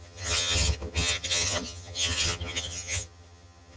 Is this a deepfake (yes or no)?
yes